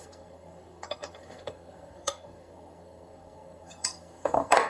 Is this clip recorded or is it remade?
remade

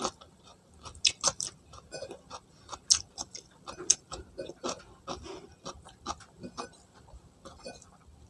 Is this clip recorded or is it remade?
recorded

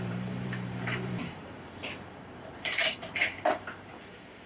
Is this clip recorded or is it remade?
remade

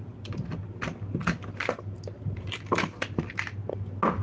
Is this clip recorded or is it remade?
recorded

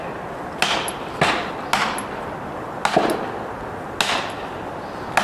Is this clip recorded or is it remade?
recorded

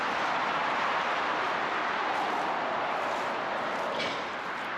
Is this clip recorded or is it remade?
recorded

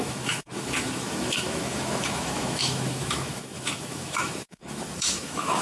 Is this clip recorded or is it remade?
remade